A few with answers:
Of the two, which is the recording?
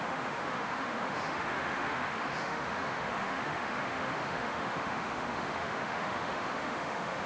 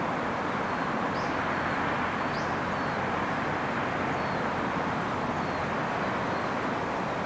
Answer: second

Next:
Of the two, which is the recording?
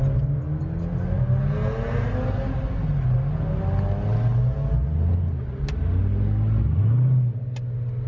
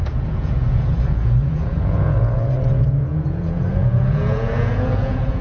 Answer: first